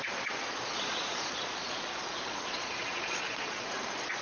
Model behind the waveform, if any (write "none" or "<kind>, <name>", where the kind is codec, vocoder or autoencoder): vocoder, Vocos